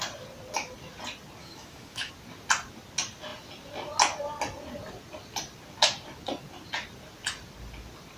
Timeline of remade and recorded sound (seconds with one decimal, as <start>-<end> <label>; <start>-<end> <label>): 0.0-1.4 recorded; 1.4-2.1 remade; 2.1-8.2 recorded